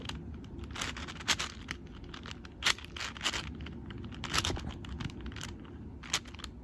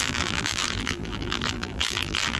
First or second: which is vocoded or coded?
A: second